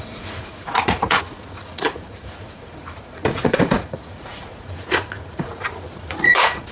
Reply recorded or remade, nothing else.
remade